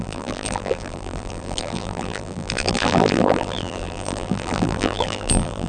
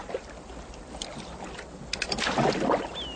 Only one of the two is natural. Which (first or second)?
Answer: second